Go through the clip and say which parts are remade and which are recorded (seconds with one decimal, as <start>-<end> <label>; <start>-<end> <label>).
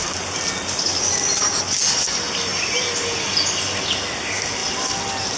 0.0-5.4 recorded